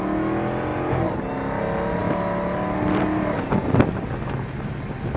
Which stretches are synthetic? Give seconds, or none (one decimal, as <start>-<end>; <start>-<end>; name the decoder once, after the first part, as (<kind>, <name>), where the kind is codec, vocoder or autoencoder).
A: none